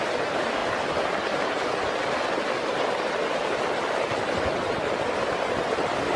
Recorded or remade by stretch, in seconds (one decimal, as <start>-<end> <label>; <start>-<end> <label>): 0.0-6.2 recorded